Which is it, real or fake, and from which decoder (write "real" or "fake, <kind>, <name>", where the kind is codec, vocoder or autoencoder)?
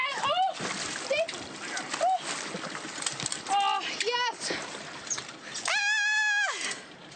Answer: real